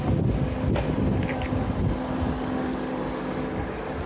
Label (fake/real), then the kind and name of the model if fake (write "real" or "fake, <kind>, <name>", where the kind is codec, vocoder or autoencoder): real